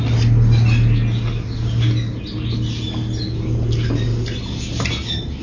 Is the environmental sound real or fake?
real